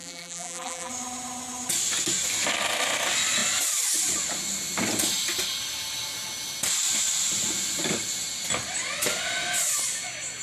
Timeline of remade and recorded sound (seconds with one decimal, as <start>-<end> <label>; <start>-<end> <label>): 0.0-0.9 remade; 0.9-10.4 recorded